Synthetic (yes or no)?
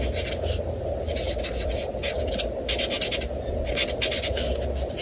no